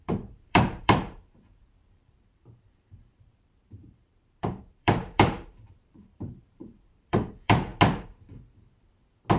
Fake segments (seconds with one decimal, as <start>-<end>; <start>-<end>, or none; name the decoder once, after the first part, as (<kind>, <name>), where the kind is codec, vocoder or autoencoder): 0.0-7.7 (vocoder, BigVGAN v2)